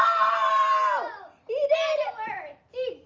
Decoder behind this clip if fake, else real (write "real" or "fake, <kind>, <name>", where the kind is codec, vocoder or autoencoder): real